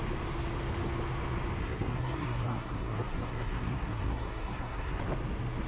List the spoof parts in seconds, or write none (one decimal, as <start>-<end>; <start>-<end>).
1.6-5.0